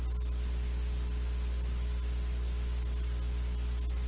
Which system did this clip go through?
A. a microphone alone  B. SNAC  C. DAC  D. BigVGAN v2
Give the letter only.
A